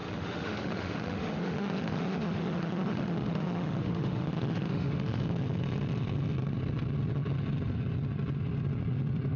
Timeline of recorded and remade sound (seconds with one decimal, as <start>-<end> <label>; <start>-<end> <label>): 0.0-5.2 remade; 5.2-9.4 recorded